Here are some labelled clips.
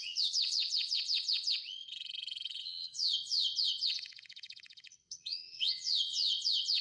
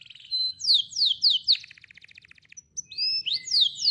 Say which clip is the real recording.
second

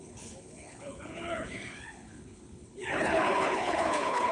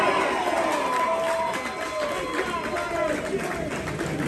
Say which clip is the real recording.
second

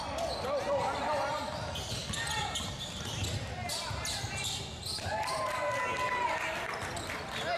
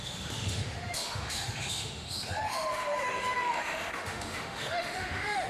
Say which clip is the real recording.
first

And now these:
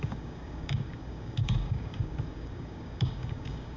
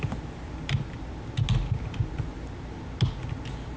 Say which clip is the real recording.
second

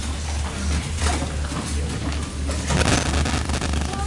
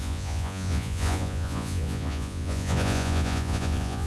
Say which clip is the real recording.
first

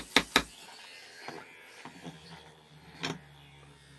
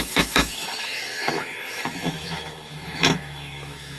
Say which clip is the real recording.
first